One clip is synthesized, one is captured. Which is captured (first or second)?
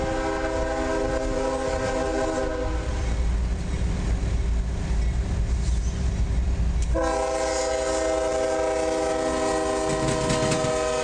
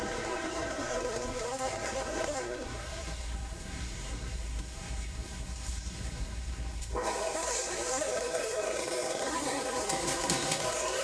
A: first